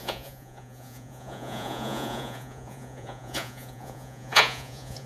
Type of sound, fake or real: fake